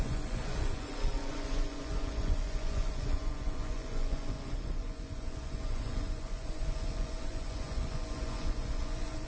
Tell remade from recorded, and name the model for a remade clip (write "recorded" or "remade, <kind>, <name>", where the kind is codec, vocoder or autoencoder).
remade, vocoder, Vocos